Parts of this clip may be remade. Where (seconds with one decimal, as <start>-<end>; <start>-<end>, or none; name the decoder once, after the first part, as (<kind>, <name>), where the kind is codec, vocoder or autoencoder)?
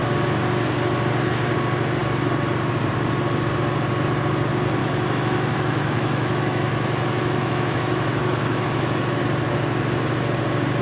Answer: 4.8-9.2 (autoencoder, DAC-VAE)